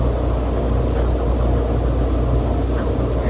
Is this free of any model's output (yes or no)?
yes